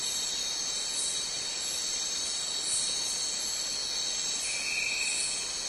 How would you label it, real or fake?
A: real